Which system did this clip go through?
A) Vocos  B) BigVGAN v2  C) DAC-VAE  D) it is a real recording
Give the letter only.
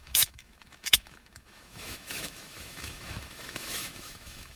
C